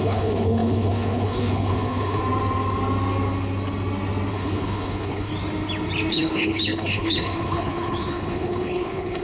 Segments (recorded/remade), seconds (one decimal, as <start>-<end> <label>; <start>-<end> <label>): 0.0-2.2 remade; 2.2-4.3 recorded; 4.3-5.3 remade; 5.3-6.1 recorded; 6.1-9.2 remade